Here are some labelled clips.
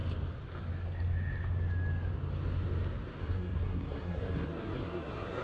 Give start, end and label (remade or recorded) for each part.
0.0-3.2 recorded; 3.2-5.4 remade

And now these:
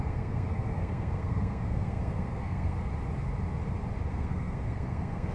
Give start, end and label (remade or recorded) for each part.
0.0-2.9 remade; 2.9-4.1 recorded; 4.1-5.3 remade

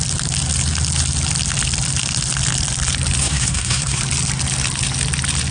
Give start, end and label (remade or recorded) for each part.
0.0-3.2 recorded; 3.2-4.0 remade; 4.0-5.5 recorded